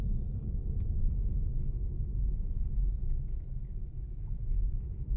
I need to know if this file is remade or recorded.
recorded